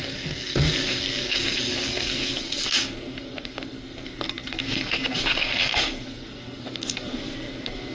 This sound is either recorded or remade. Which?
remade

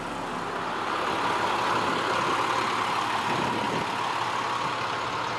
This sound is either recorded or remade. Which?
recorded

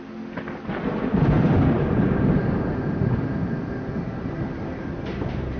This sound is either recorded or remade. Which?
recorded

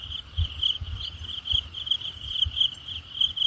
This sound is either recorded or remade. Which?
recorded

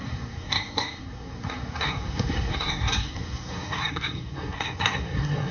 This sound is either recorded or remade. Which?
remade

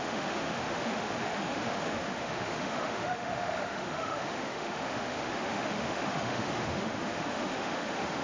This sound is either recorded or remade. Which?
remade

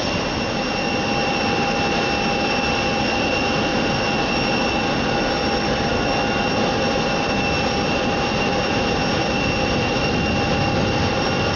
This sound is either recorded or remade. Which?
recorded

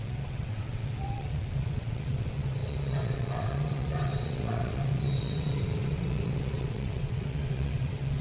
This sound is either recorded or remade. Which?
remade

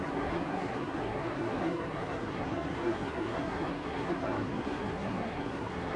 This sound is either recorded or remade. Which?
remade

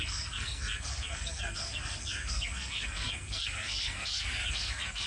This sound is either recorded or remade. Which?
remade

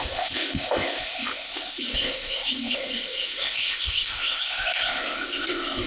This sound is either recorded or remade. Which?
remade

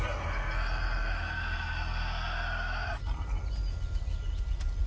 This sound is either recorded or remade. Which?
recorded